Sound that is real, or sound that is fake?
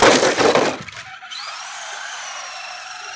real